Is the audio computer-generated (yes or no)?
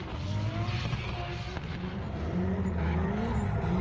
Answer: no